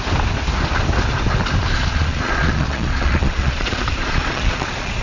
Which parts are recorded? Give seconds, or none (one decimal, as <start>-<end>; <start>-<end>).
0.0-1.8